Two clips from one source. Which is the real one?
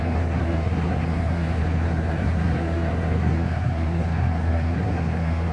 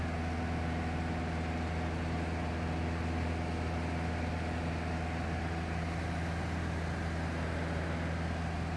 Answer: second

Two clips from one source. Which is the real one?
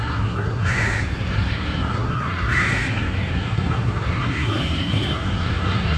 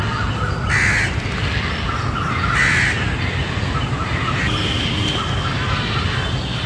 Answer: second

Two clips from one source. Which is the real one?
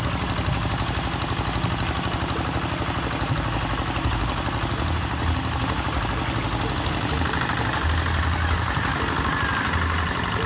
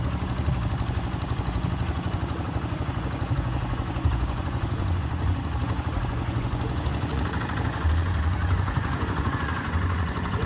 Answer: first